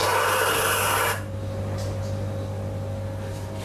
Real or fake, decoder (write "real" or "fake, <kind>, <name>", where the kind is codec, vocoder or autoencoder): real